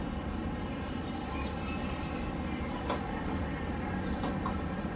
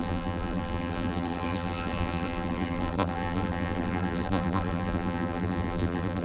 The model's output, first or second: second